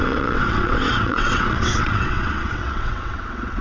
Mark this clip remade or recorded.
remade